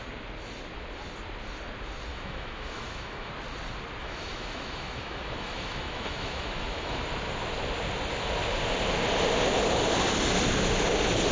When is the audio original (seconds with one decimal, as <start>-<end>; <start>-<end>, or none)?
0.0-2.1; 3.3-4.0; 7.0-11.3